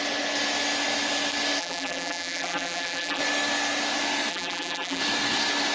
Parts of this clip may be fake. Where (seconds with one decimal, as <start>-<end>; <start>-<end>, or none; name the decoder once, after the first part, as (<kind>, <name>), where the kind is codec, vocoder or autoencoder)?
1.6-3.2 (vocoder, BigVGAN v2); 4.3-5.0